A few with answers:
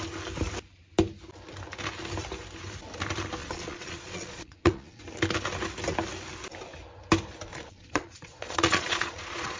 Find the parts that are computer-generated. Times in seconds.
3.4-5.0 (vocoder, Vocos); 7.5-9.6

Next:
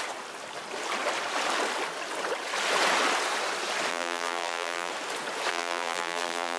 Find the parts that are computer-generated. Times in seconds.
3.9-4.9 (vocoder, BigVGAN v2); 5.5-6.6

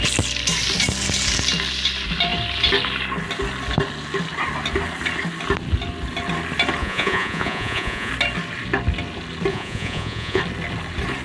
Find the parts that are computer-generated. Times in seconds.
6.8-8.1 (vocoder, Vocos); 9.5-10.4

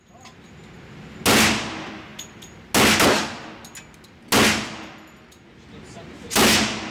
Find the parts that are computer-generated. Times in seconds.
none

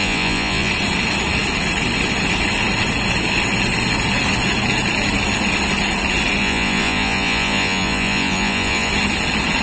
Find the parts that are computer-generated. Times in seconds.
0.0-0.7 (vocoder, Vocos); 6.4-8.9

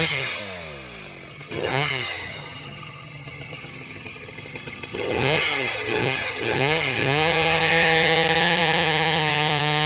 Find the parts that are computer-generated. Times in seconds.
0.0-0.4 (vocoder, HiFi-GAN); 1.3-9.9

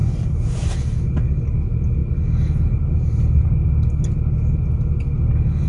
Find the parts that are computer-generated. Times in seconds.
0.0-0.8 (vocoder, BigVGAN v2)